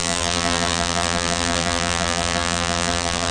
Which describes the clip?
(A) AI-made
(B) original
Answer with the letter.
A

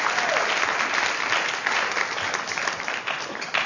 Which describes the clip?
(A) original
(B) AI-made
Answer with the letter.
A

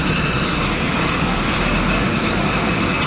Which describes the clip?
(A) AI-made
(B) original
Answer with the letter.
B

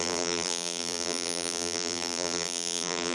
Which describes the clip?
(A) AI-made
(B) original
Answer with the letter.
A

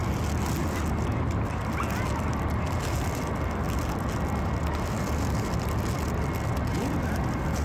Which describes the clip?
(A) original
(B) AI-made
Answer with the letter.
A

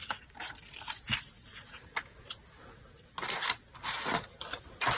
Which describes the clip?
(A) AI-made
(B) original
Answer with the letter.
B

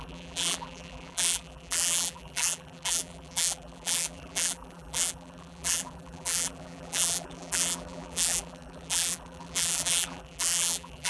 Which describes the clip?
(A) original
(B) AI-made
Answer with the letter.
B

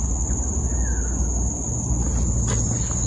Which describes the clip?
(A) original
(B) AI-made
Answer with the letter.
A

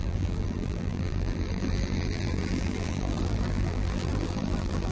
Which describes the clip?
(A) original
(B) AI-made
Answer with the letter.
B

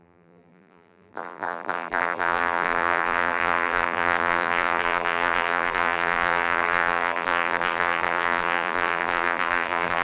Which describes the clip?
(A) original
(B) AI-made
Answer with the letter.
B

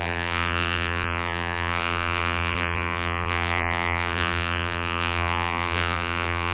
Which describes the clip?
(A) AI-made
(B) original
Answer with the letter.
A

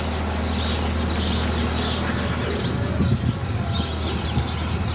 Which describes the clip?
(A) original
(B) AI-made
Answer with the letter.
A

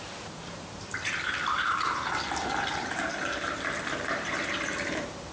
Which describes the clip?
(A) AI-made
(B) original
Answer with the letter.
A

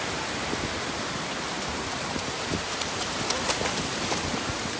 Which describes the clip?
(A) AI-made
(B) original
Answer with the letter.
A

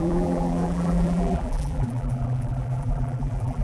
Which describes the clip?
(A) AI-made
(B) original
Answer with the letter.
A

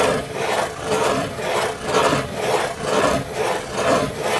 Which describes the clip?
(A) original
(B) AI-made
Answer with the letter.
B